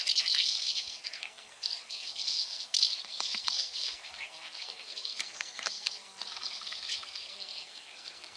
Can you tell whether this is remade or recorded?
remade